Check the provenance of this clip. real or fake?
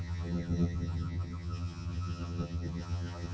fake